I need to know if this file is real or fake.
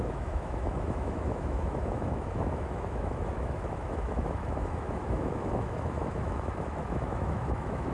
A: fake